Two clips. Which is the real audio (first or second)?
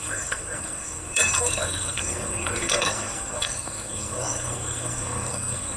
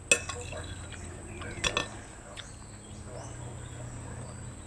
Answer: second